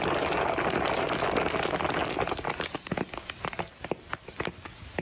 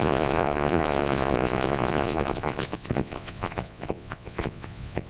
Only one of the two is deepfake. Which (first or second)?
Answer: second